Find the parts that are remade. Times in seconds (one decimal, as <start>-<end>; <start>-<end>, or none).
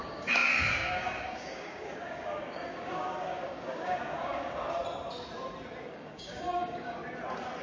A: 0.0-4.8; 5.9-7.0